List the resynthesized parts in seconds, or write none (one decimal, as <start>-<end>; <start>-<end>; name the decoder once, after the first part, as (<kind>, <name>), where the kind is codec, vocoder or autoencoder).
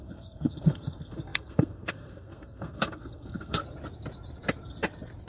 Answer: 0.0-3.6 (codec, SNAC)